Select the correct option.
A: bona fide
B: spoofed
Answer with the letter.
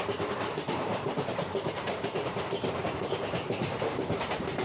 B